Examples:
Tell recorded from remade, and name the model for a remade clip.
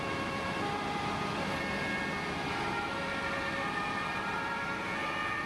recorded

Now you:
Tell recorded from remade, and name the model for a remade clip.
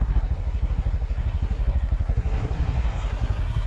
remade, codec, SNAC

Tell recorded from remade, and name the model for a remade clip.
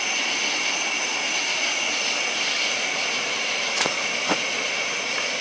recorded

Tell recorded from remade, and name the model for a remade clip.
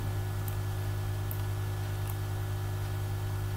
recorded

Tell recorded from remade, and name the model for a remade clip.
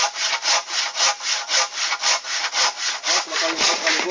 recorded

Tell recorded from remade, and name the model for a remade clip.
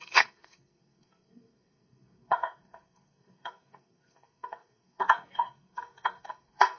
remade, codec, SNAC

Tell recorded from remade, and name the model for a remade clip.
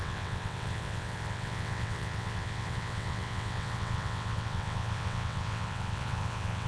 remade, vocoder, WaveNeXt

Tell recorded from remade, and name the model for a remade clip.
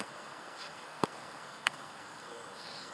remade, codec, SNAC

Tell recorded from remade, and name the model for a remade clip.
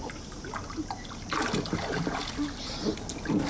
recorded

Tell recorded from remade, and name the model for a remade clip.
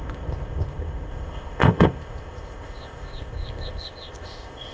remade, codec, ZipCodec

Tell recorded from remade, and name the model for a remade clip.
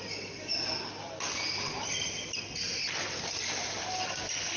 recorded